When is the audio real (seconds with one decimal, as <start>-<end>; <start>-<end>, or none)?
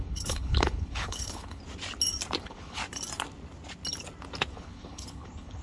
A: 1.6-2.4; 2.8-4.5